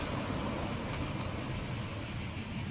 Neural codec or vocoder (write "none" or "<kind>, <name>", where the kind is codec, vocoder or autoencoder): none